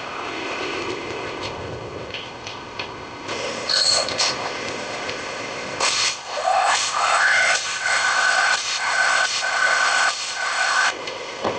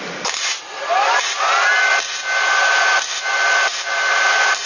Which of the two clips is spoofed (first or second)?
first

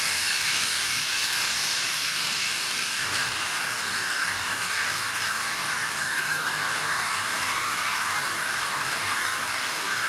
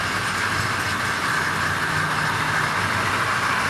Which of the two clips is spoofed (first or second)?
first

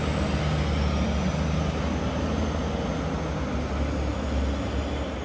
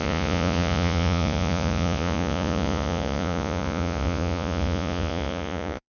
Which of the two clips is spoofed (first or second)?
second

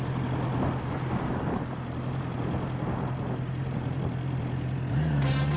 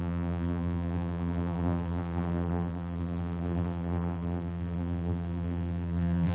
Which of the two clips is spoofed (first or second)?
second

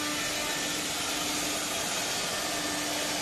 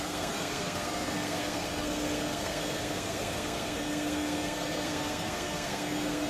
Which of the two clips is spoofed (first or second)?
second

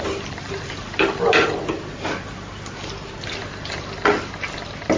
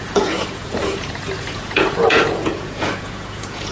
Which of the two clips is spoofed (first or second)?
second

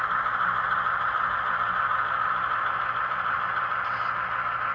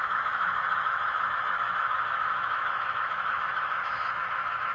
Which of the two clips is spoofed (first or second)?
second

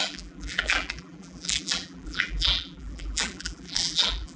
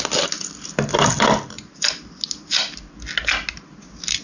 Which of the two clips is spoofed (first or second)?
first